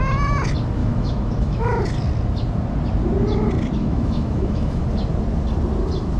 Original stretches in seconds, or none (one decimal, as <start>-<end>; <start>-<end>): 0.0-0.8; 1.8-3.8; 4.8-6.2